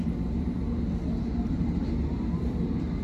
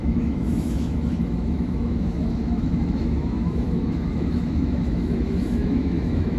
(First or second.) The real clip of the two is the first